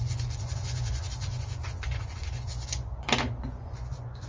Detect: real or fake fake